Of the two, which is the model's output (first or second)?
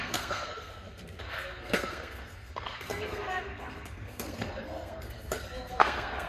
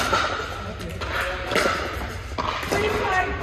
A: first